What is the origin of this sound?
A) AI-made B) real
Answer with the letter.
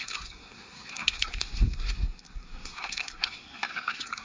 A